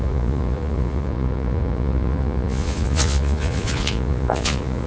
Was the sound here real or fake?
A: fake